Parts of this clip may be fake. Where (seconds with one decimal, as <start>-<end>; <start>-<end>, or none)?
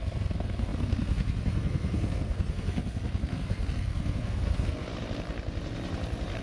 0.0-4.9